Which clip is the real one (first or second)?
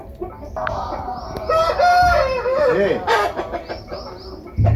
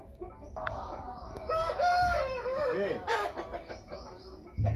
first